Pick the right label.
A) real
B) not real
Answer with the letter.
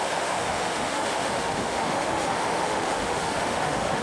B